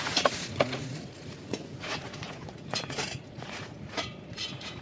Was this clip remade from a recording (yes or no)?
yes